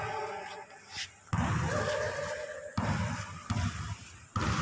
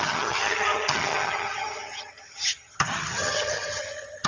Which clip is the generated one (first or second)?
second